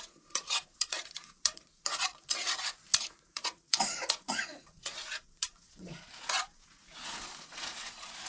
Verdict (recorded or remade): remade